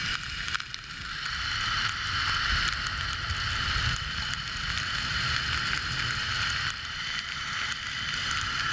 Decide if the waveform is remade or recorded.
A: recorded